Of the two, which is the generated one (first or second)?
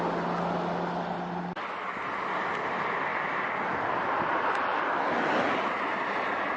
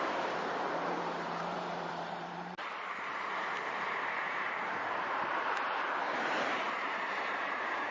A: second